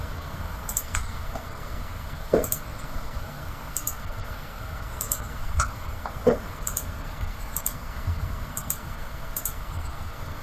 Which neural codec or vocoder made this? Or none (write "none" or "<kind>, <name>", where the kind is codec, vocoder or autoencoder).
codec, SNAC